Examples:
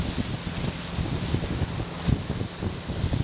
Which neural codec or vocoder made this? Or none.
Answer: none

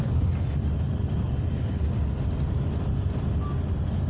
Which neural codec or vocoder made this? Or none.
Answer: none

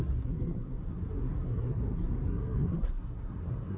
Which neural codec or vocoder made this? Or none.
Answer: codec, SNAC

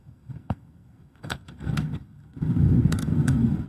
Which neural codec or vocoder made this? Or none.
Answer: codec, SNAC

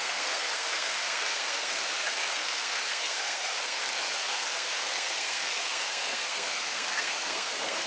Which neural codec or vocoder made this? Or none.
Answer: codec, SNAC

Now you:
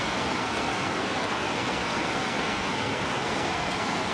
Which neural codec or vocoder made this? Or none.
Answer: codec, SNAC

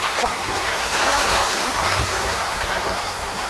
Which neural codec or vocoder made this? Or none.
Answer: codec, SNAC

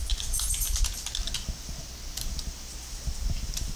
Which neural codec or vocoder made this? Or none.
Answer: none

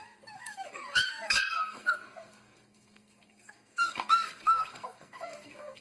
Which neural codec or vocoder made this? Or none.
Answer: codec, SNAC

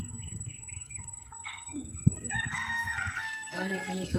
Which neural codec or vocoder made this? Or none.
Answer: codec, SNAC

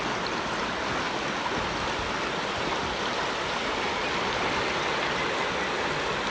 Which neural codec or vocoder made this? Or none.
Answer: none